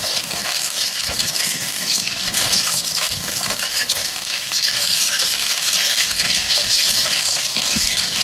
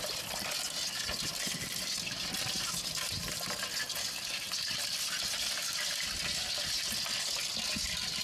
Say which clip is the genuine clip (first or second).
second